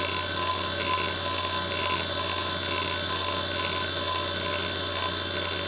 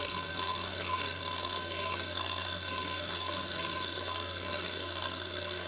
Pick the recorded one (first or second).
first